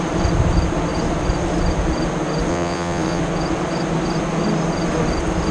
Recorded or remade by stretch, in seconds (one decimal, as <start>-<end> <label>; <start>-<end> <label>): 0.0-2.5 recorded; 2.5-3.2 remade; 3.2-5.5 recorded